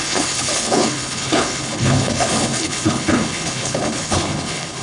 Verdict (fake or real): fake